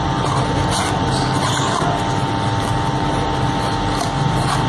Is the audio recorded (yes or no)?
yes